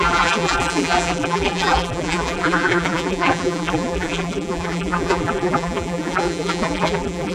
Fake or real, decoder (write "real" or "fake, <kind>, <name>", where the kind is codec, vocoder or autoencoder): fake, vocoder, BigVGAN v2